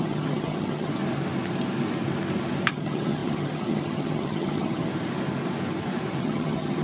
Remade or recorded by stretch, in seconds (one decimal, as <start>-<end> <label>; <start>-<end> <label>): 0.0-1.0 remade; 1.0-2.7 recorded; 2.7-4.9 remade; 4.9-6.2 recorded; 6.2-6.8 remade